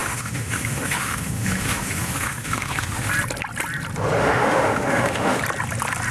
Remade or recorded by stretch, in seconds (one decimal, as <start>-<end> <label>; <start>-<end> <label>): 0.0-3.1 remade; 3.1-4.2 recorded; 4.2-5.4 remade; 5.4-6.1 recorded